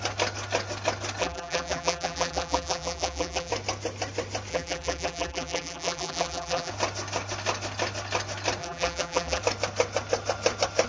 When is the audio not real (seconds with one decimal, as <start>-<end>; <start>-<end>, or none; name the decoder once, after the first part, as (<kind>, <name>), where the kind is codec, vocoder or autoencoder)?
1.2-3.5 (vocoder, BigVGAN v2); 4.5-6.7; 8.6-9.4